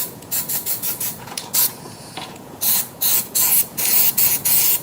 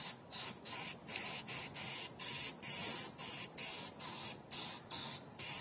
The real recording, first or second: second